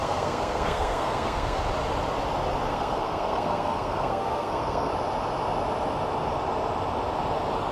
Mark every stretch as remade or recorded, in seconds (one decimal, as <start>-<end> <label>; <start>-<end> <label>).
0.0-1.6 remade; 1.6-2.7 recorded; 2.7-4.9 remade; 4.9-7.7 recorded